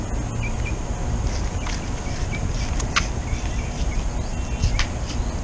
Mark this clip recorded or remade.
recorded